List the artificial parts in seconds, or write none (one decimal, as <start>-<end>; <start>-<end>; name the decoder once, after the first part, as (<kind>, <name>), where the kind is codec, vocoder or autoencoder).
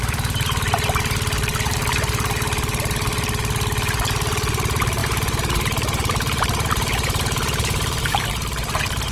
5.0-8.2 (vocoder, BigVGAN v2)